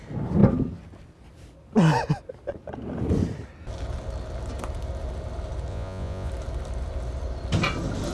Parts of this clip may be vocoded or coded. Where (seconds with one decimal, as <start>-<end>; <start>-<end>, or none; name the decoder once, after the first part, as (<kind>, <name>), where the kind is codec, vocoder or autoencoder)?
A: 5.7-6.3 (vocoder, Vocos)